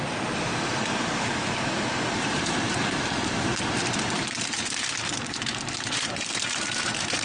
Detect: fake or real fake